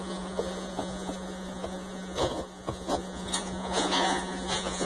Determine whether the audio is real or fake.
fake